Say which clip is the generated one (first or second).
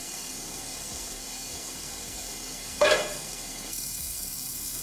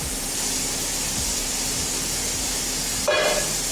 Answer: first